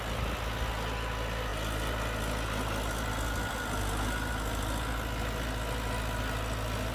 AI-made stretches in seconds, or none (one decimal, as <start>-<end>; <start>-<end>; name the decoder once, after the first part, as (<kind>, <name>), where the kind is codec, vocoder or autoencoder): none